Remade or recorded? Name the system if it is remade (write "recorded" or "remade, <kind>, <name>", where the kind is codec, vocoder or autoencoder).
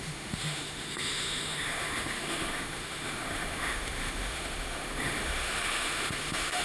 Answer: remade, autoencoder, DAC-VAE